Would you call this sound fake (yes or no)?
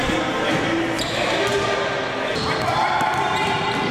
no